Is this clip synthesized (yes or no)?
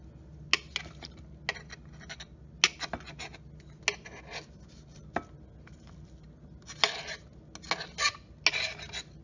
no